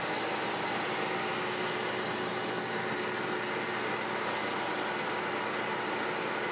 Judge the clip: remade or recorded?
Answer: recorded